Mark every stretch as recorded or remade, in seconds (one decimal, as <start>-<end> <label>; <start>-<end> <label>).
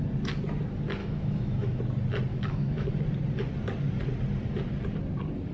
0.0-1.0 recorded; 1.0-1.8 remade; 1.8-2.3 recorded; 2.3-2.9 remade; 2.9-5.5 recorded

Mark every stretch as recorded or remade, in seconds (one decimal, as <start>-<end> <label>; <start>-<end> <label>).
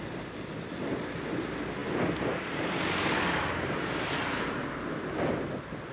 0.0-5.9 recorded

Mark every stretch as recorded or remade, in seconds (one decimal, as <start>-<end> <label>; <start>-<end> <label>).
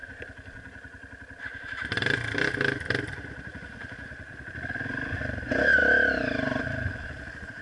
0.0-3.5 recorded; 3.5-5.2 remade; 5.2-7.6 recorded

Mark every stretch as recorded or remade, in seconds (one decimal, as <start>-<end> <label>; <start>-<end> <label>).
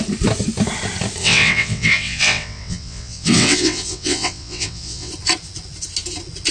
0.0-1.2 recorded; 1.2-5.1 remade; 5.1-6.5 recorded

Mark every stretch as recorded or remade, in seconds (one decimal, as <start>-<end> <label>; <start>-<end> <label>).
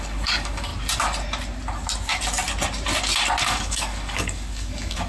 0.0-0.7 remade; 0.7-3.4 recorded; 3.4-5.1 remade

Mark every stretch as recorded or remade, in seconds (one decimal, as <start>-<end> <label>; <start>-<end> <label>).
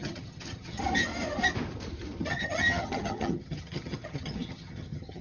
0.0-0.8 remade; 0.8-2.3 recorded; 2.3-5.2 remade